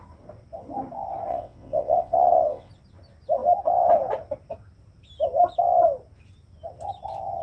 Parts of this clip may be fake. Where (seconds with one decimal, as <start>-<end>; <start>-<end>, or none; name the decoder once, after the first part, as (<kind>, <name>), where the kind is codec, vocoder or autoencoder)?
1.3-2.7 (vocoder, WaveNeXt)